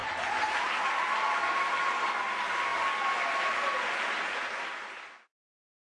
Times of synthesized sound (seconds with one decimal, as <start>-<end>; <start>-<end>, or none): none